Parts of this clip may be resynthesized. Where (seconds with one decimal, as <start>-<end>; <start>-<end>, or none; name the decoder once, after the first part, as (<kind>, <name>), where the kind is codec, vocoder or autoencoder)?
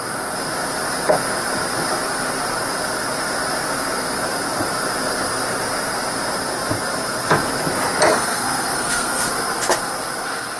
8.1-9.3 (codec, SNAC)